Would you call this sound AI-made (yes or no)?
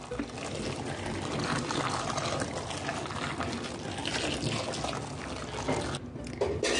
no